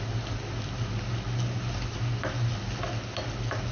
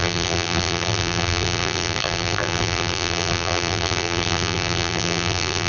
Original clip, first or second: first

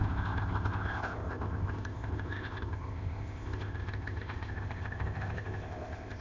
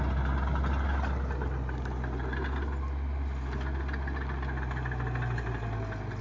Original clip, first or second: second